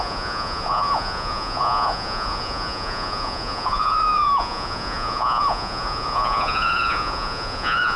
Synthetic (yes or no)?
yes